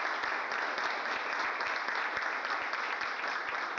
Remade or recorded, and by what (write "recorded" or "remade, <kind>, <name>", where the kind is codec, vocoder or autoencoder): recorded